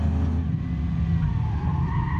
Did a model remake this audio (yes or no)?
no